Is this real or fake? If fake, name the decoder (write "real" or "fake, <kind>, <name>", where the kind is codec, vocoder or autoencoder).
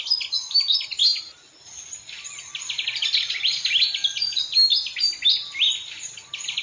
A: real